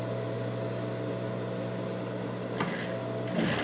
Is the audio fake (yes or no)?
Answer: no